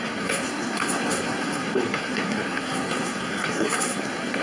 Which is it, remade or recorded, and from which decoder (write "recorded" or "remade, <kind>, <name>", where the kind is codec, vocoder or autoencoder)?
remade, codec, SNAC